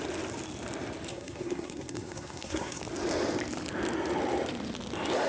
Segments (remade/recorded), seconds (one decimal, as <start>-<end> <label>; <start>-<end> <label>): 0.0-1.1 recorded; 1.1-2.8 remade; 2.8-5.3 recorded